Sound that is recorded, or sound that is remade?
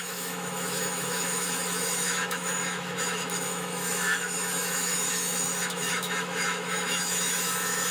remade